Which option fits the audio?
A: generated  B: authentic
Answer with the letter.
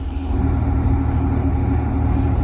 B